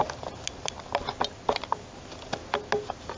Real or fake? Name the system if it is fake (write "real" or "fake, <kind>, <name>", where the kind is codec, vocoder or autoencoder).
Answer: real